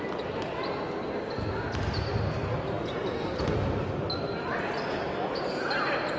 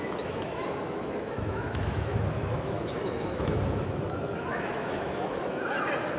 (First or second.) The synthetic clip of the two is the second